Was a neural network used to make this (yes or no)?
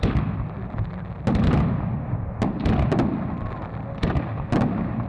no